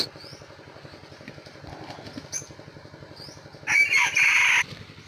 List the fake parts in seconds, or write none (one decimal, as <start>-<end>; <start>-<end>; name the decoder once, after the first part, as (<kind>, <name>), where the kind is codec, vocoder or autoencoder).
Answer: none

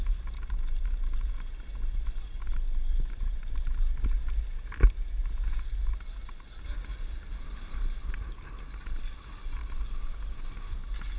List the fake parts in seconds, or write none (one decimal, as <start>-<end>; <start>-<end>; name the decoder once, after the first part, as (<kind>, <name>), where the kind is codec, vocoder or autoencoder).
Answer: 6.9-7.9 (vocoder, BigVGAN v2)

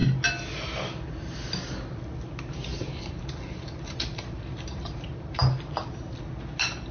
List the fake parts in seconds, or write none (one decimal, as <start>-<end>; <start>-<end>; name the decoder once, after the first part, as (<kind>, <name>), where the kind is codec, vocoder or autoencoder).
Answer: 2.7-5.8 (vocoder, BigVGAN v2)

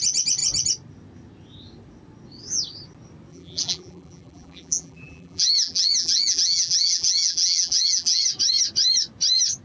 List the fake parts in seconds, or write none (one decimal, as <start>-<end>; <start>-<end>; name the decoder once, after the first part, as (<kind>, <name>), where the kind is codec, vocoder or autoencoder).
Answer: 3.3-8.2 (vocoder, BigVGAN v2)

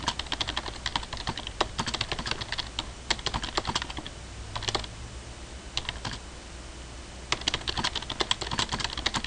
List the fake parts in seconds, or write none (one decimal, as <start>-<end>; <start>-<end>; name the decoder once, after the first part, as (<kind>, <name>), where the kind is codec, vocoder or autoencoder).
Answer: none

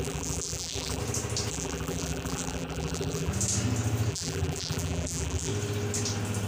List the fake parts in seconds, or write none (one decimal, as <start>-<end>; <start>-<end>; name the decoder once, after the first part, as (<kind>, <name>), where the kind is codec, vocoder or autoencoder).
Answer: 0.0-1.0 (vocoder, BigVGAN v2); 1.5-3.3; 4.1-5.5

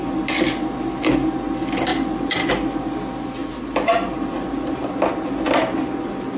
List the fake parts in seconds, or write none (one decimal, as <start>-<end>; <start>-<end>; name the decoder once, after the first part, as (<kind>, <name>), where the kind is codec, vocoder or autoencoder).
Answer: 1.9-2.5 (vocoder, BigVGAN v2); 3.4-4.9

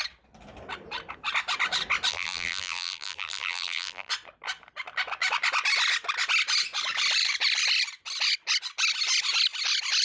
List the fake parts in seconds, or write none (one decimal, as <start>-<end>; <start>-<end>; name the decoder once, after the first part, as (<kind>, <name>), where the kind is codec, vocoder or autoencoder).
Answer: 2.1-4.1 (vocoder, BigVGAN v2)